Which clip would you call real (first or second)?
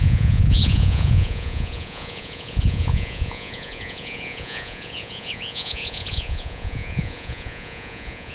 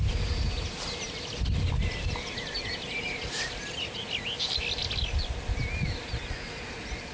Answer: second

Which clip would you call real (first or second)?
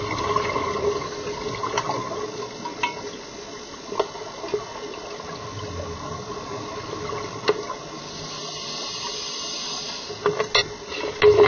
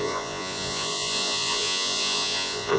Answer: first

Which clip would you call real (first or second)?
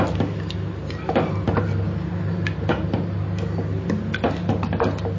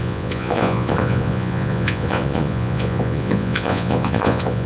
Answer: first